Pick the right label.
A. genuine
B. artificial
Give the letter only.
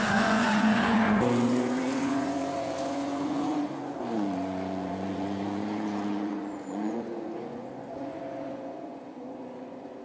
B